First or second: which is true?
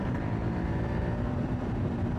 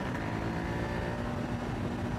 second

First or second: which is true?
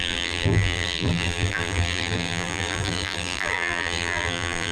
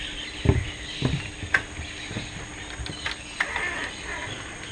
second